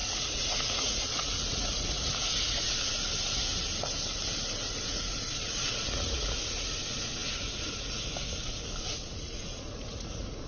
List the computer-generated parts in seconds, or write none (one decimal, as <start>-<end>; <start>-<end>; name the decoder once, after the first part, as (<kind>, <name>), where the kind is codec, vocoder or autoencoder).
0.0-2.9 (vocoder, Vocos); 4.7-10.5